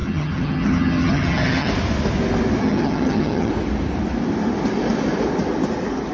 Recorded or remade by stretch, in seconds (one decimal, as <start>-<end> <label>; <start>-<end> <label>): 0.0-1.7 remade; 1.7-2.6 recorded; 2.6-3.5 remade; 3.5-6.1 recorded